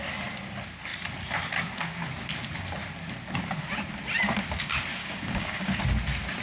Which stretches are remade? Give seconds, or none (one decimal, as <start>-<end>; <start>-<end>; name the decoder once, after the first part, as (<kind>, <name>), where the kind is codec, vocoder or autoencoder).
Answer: 5.0-5.8 (codec, DAC)